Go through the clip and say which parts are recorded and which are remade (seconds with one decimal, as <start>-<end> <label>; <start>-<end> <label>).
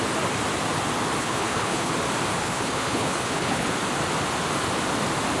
0.0-1.2 recorded; 1.2-1.9 remade; 1.9-2.4 recorded; 2.4-3.7 remade; 3.7-5.4 recorded